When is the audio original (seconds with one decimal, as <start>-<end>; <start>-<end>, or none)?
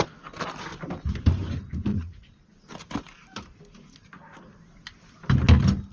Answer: 0.0-1.9; 2.5-5.9